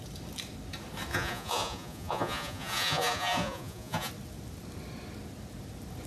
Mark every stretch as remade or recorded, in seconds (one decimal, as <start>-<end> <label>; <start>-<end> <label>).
0.0-1.1 recorded; 1.1-4.1 remade; 4.1-6.1 recorded